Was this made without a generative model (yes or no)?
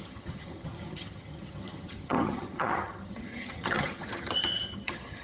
no